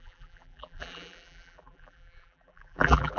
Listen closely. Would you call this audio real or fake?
fake